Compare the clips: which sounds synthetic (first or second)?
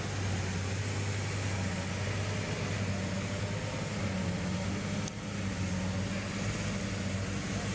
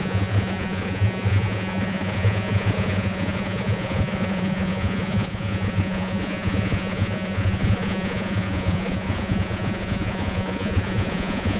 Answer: second